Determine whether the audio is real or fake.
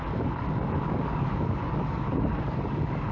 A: fake